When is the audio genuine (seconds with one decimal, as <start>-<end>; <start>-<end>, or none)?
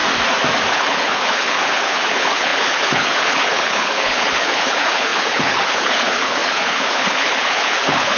0.0-0.7